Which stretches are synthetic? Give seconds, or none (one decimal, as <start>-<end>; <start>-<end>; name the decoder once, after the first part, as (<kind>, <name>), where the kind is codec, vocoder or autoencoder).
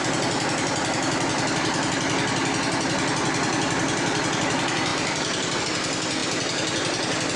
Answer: 3.5-4.4 (vocoder, BigVGAN v2); 4.9-5.6